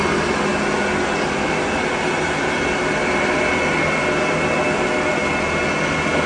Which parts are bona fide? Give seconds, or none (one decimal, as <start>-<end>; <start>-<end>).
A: 0.0-6.3